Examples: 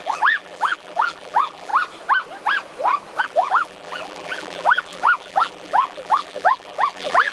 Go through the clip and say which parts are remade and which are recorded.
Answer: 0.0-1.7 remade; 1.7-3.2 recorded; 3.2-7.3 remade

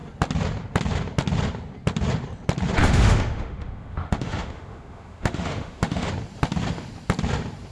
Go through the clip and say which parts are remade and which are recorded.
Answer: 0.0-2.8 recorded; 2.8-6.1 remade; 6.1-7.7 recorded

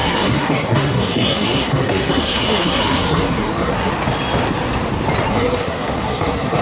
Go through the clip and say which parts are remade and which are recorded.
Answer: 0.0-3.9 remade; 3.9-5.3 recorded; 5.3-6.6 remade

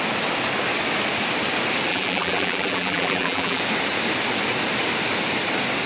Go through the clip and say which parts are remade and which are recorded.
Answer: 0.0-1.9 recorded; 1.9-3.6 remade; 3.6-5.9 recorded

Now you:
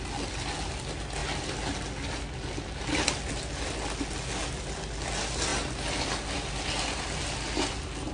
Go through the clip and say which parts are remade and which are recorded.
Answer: 0.0-8.1 recorded

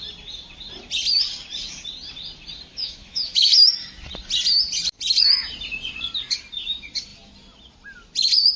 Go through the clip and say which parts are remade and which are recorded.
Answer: 0.0-2.7 recorded; 2.7-3.7 remade; 3.7-8.6 recorded

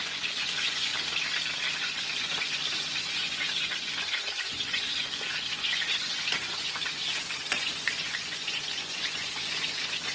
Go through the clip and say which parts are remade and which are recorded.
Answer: 0.0-0.9 remade; 0.9-1.7 recorded; 1.7-10.1 remade